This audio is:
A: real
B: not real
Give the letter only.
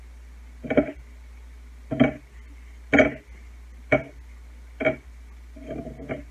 A